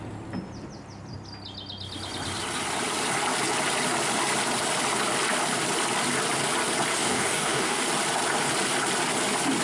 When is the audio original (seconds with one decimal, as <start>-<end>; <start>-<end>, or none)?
0.0-6.9; 7.8-9.6